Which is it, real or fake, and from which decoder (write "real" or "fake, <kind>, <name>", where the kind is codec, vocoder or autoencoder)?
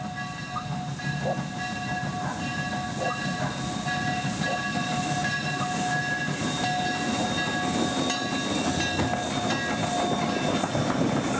real